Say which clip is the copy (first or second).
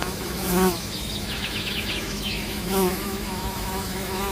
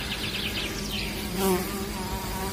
first